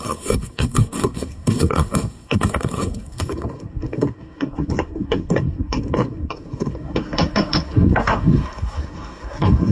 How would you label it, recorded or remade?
remade